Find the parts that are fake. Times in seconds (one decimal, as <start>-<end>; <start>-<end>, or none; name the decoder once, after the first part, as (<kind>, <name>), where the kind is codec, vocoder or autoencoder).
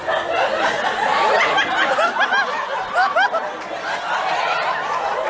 none